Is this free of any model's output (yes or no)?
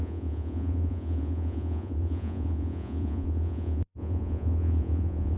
no